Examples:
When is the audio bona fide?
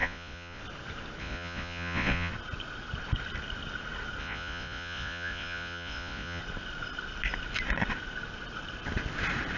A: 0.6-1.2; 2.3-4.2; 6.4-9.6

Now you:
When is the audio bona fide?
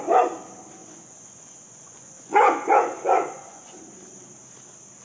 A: 0.0-0.8; 3.8-5.0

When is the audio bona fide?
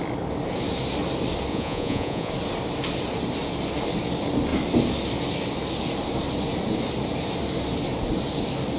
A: 0.0-1.5; 2.3-8.8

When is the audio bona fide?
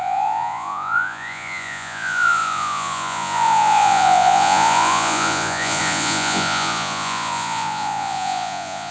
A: none